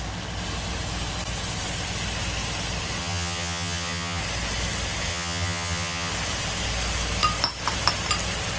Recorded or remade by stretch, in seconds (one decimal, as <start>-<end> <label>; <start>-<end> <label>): 0.0-3.0 recorded; 3.0-4.2 remade; 4.2-5.1 recorded; 5.1-6.1 remade; 6.1-8.6 recorded